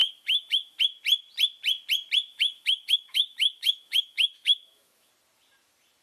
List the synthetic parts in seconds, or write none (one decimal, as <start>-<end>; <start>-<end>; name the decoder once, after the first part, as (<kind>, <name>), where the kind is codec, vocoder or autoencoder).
0.0-0.8 (autoencoder, DAC-VAE); 2.3-5.1